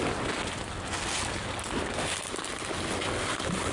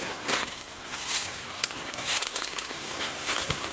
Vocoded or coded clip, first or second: second